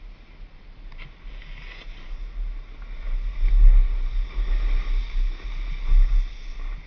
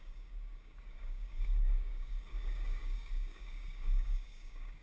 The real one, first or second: first